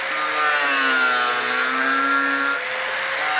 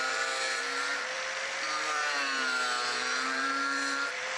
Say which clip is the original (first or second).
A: first